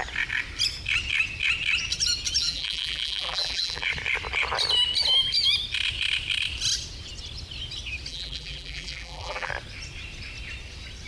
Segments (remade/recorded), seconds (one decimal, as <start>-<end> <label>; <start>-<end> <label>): 0.0-2.4 recorded; 2.4-3.9 remade; 3.9-8.1 recorded; 8.1-9.5 remade; 9.5-11.1 recorded